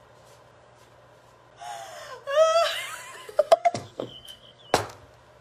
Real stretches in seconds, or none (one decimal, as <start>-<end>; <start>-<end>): 0.0-3.2; 4.6-5.4